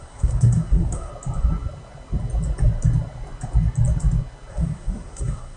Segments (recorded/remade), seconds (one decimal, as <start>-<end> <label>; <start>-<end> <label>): 0.0-1.1 remade; 1.1-4.5 recorded; 4.5-5.6 remade